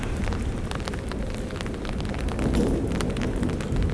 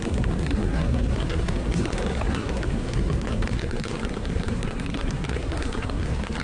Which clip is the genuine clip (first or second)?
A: first